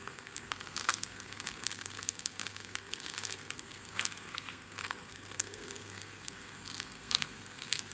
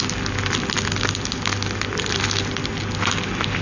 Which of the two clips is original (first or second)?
second